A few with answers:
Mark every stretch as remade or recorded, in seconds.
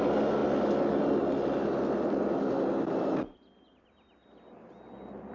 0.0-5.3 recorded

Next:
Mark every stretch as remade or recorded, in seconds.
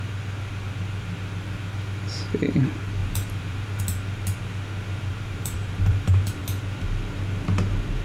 0.0-3.0 recorded; 3.0-3.8 remade; 3.8-5.1 recorded; 5.1-6.4 remade; 6.4-8.0 recorded